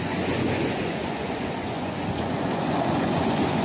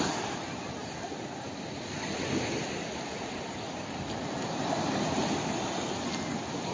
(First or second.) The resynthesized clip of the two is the first